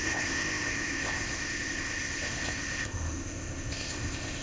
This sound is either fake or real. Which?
fake